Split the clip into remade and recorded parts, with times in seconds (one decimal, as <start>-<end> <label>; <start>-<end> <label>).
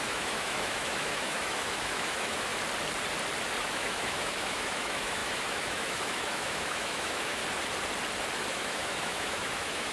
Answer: 0.0-2.5 remade; 2.5-3.6 recorded; 3.6-7.4 remade; 7.4-8.5 recorded; 8.5-9.9 remade